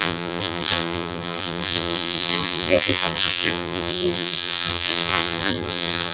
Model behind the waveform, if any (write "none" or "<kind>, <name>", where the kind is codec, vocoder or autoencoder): vocoder, BigVGAN v2